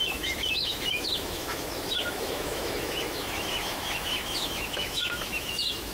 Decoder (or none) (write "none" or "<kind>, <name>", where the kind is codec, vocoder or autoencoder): autoencoder, DAC-VAE